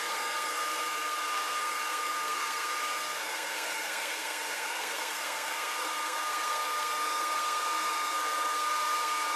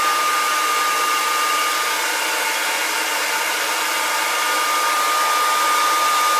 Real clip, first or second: second